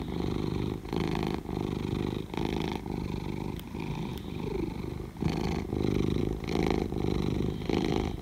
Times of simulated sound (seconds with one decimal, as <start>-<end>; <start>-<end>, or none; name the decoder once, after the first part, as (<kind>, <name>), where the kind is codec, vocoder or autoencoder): none